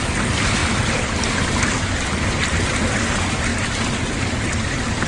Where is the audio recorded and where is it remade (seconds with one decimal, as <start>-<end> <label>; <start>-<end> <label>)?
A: 0.0-0.6 recorded; 0.6-1.4 remade; 1.4-5.1 recorded